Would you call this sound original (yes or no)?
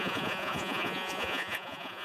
no